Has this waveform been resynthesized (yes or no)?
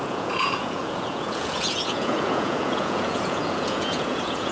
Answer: yes